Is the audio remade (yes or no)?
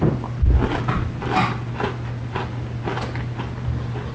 no